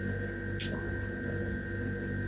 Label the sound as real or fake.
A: real